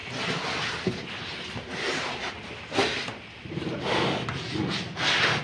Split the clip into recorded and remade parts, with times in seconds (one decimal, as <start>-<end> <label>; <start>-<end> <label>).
0.0-5.4 recorded